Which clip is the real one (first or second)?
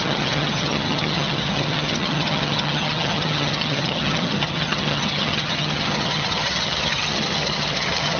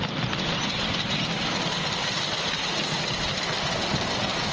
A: second